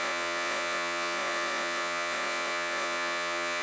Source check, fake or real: fake